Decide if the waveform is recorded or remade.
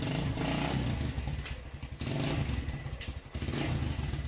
recorded